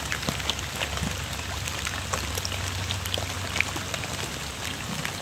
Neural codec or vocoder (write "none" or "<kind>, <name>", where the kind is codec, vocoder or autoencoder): none